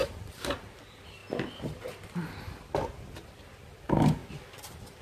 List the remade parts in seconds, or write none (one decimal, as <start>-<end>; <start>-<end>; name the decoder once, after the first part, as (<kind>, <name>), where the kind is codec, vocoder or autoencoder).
0.0-1.2 (vocoder, BigVGAN v2); 3.7-4.2